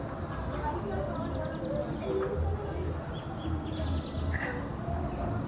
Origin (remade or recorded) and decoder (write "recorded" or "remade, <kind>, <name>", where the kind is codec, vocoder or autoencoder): recorded